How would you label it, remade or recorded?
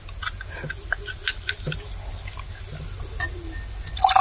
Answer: recorded